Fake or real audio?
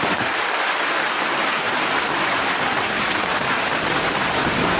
real